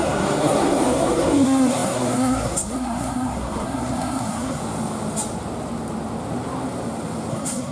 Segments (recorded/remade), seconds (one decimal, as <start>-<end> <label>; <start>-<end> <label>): 0.0-4.6 remade; 4.6-7.3 recorded; 7.3-7.7 remade